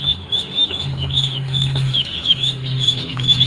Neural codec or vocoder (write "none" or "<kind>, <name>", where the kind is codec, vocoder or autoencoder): autoencoder, DAC-VAE